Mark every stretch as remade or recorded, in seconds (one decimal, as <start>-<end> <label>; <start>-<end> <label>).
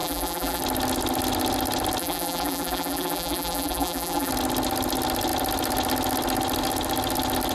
0.0-0.6 remade; 0.6-2.0 recorded; 2.0-4.3 remade; 4.3-7.5 recorded